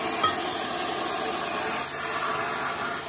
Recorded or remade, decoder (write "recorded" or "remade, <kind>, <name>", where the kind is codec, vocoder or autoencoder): recorded